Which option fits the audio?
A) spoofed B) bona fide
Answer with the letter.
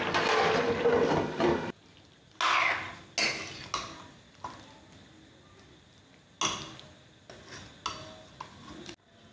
B